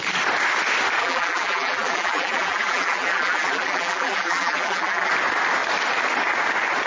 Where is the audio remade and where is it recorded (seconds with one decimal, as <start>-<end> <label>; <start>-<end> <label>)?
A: 0.0-1.0 recorded; 1.0-5.1 remade; 5.1-6.9 recorded

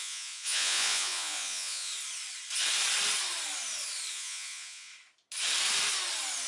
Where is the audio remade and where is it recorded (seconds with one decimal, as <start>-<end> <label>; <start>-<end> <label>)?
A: 0.0-1.9 remade; 1.9-4.1 recorded; 4.1-4.9 remade; 4.9-6.5 recorded

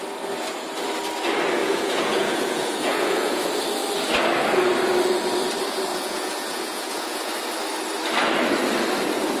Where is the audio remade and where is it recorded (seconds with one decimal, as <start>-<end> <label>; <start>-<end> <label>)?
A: 0.0-1.6 recorded; 1.6-3.4 remade; 3.4-5.9 recorded; 5.9-7.3 remade; 7.3-9.4 recorded

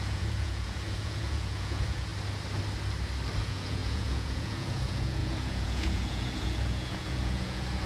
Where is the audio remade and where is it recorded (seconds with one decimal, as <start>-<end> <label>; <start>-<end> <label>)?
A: 0.0-2.1 remade; 2.1-3.4 recorded; 3.4-7.9 remade

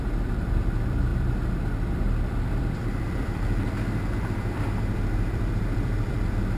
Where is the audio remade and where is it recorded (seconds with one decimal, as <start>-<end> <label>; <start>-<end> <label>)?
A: 0.0-1.1 remade; 1.1-1.9 recorded; 1.9-6.6 remade

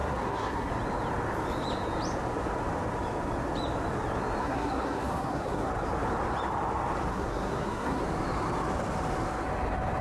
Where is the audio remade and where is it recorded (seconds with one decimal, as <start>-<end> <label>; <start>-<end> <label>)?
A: 0.0-0.7 remade; 0.7-4.4 recorded; 4.4-5.7 remade; 5.7-7.1 recorded; 7.1-8.0 remade; 8.0-10.0 recorded

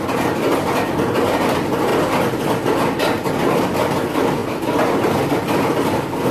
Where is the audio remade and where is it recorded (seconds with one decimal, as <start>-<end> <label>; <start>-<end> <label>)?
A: 0.0-6.3 recorded

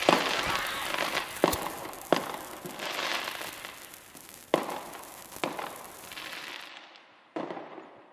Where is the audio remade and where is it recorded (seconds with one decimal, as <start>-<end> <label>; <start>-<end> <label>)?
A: 0.0-8.1 recorded